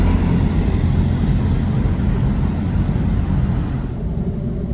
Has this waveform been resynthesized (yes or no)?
no